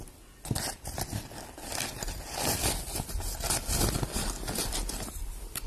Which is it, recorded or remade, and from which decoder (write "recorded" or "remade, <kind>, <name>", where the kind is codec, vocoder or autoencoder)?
recorded